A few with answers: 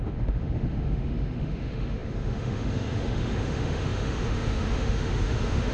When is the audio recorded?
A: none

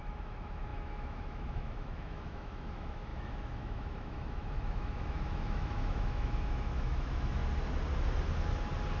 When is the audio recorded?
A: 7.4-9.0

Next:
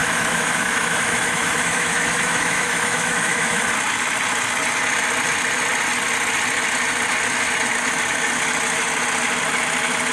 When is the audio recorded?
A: 3.6-10.1

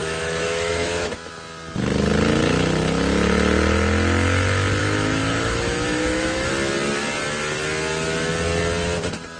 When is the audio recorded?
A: 1.3-4.8; 6.5-9.4